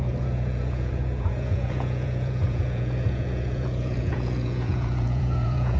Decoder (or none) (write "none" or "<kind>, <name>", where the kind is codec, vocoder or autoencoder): vocoder, Vocos